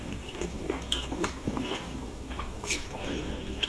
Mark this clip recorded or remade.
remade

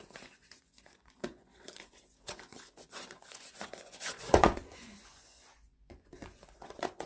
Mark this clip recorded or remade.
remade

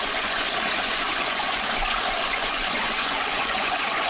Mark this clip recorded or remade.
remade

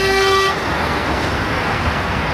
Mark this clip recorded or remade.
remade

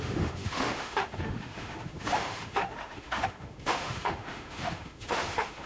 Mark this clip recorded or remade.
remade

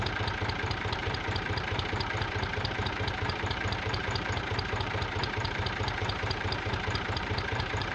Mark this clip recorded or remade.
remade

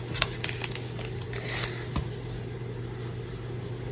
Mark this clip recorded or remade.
recorded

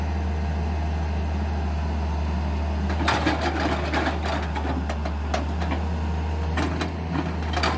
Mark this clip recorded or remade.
recorded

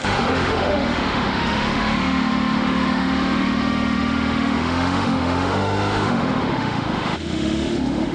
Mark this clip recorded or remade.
remade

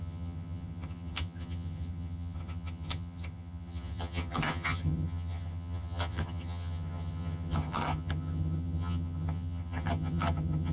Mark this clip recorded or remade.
remade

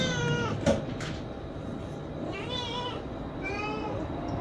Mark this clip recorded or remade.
recorded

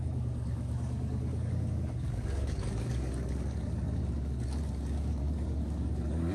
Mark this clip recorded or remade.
remade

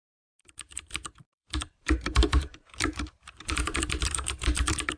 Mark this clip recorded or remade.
remade